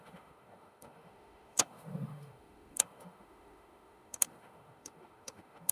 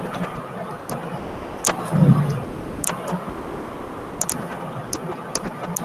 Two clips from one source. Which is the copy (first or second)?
first